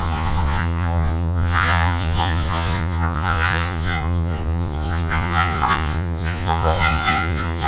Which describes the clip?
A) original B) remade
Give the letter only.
B